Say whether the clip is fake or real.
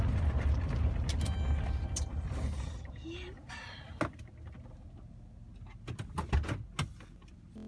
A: real